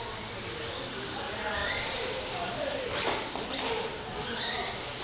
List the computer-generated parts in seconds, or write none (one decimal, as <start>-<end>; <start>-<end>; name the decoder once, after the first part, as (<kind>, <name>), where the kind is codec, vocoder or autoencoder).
1.6-3.7 (vocoder, BigVGAN v2)